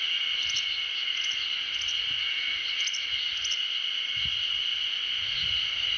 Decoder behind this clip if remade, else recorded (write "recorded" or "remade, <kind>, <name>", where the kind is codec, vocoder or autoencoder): recorded